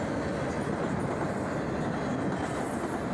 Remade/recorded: recorded